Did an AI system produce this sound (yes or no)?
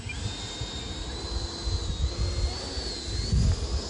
no